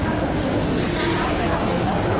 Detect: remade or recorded remade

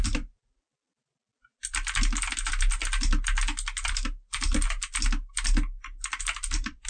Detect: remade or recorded recorded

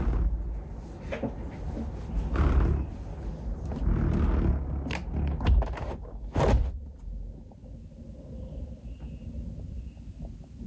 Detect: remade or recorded recorded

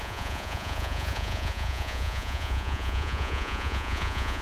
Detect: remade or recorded remade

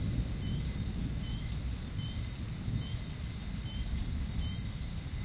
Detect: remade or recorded recorded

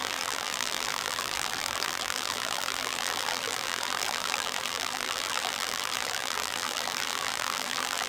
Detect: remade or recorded remade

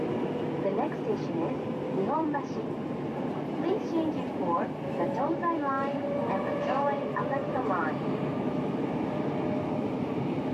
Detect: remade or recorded recorded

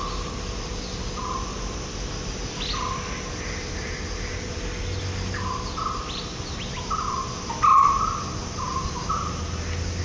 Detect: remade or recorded recorded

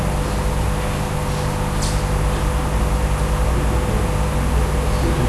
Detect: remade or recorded recorded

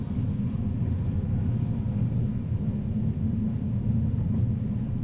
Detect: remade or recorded recorded